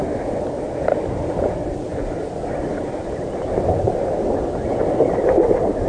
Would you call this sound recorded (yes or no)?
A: yes